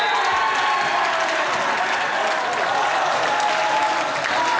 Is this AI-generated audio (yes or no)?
no